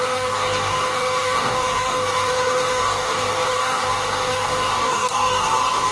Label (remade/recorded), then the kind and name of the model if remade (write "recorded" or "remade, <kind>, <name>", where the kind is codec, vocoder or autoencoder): remade, codec, DAC